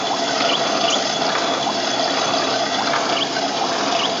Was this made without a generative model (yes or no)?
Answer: yes